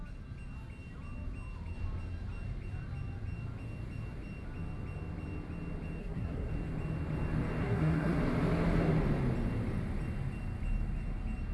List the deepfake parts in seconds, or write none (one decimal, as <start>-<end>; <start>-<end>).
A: 6.0-6.5; 7.6-8.2